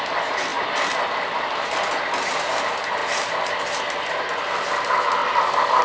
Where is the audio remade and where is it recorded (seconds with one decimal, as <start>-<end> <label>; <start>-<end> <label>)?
0.0-5.8 recorded